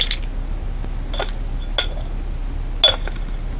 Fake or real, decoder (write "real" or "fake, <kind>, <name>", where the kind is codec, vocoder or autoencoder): real